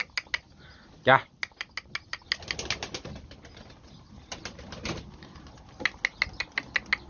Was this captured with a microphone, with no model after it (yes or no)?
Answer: yes